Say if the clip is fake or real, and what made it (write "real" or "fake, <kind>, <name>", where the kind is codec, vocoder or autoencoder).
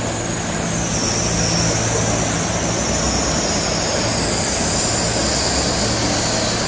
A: real